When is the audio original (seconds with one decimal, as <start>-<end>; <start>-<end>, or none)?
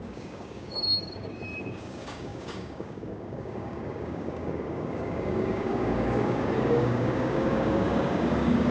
none